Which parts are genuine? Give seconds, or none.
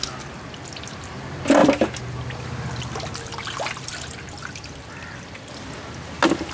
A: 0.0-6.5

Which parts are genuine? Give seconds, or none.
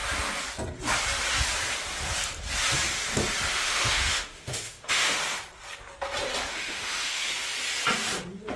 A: 0.0-3.5; 5.2-6.5; 7.3-8.6